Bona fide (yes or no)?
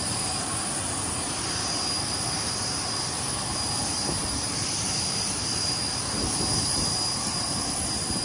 yes